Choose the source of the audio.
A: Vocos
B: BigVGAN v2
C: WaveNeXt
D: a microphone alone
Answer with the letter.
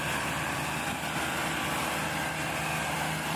D